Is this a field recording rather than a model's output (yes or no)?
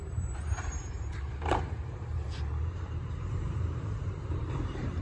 no